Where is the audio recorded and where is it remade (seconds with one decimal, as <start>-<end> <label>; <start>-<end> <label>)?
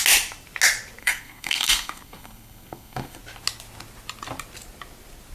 0.0-1.0 recorded; 1.0-3.2 remade; 3.2-5.3 recorded